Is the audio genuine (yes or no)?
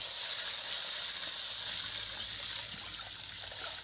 yes